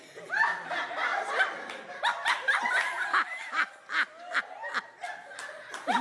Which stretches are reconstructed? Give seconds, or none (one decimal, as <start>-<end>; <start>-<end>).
3.1-3.7